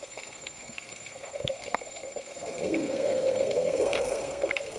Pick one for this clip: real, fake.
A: fake